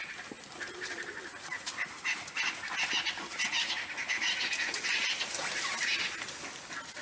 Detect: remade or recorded recorded